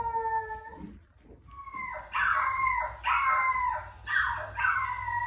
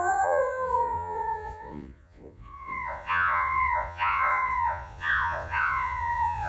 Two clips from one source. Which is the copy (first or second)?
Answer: second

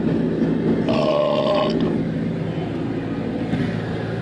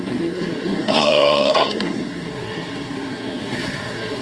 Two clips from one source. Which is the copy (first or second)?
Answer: second